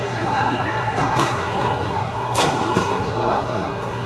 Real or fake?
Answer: fake